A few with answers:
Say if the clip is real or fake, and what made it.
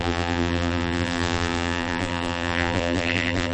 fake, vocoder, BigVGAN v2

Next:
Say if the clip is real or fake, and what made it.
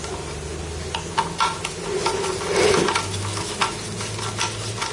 real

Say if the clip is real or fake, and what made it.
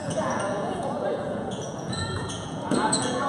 fake, vocoder, Vocos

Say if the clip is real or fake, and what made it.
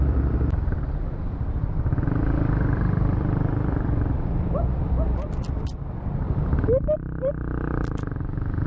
fake, vocoder, BigVGAN v2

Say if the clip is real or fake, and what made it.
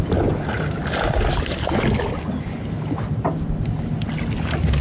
real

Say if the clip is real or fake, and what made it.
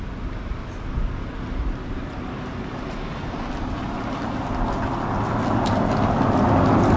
real